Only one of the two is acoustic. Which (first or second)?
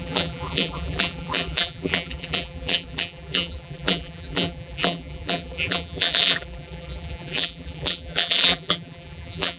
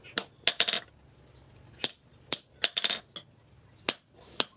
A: second